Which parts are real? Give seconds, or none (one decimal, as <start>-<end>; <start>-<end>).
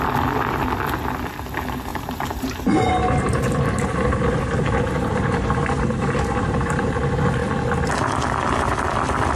0.0-1.9; 6.9-9.4